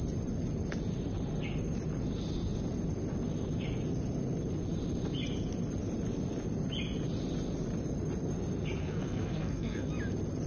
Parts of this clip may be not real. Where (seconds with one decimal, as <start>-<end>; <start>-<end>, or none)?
8.8-9.9